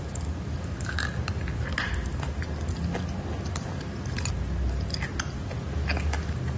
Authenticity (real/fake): real